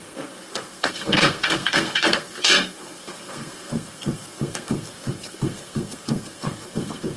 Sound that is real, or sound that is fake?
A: fake